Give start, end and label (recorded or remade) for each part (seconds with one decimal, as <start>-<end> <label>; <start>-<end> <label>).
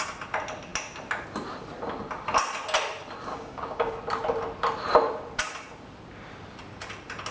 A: 0.0-3.3 recorded; 3.3-3.9 remade; 3.9-7.3 recorded